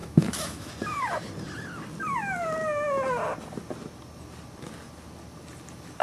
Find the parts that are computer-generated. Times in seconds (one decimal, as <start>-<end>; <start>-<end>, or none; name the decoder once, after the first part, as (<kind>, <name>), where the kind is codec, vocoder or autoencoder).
0.0-0.7 (autoencoder, DAC-VAE)